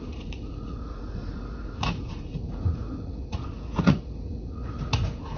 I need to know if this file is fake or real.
fake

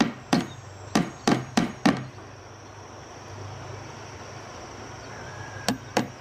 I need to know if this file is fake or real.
real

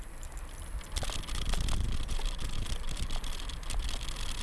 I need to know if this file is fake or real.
real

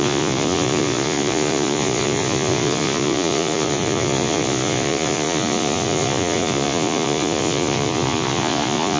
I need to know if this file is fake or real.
fake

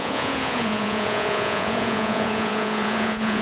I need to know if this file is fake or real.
fake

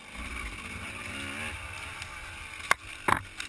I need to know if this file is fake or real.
real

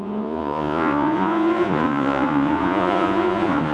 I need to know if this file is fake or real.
fake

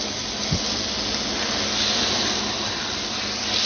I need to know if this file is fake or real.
real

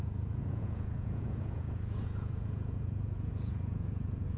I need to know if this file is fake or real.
fake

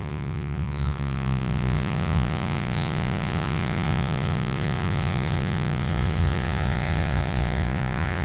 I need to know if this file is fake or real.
fake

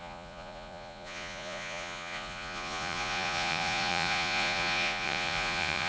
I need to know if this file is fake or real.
fake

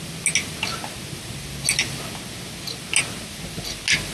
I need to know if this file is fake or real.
real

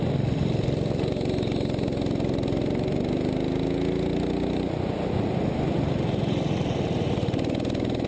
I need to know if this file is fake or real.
real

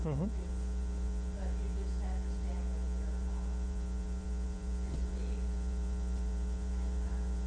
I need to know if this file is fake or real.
fake